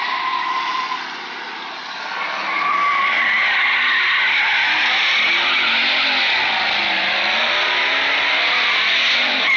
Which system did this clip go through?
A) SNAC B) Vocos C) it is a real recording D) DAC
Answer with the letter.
C